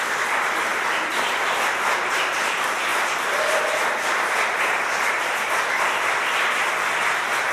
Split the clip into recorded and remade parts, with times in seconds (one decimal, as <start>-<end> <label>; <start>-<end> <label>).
0.0-2.9 recorded; 2.9-4.6 remade; 4.6-7.5 recorded